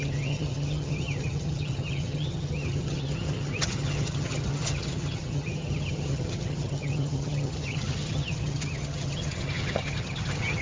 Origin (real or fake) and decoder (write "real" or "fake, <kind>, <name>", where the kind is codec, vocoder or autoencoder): fake, vocoder, HiFi-GAN